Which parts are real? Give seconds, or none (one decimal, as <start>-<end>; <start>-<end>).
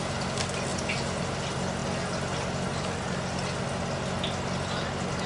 0.0-5.3